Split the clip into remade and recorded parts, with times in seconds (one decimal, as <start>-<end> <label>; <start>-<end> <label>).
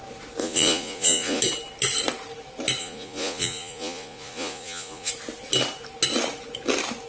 0.0-0.4 recorded; 0.4-1.4 remade; 1.4-2.8 recorded; 2.8-5.1 remade; 5.1-7.1 recorded